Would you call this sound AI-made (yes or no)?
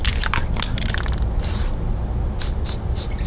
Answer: no